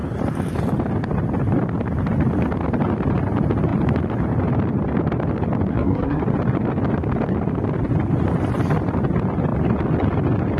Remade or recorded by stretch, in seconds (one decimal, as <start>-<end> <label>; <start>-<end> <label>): 0.0-5.7 recorded; 5.7-6.2 remade; 6.2-10.6 recorded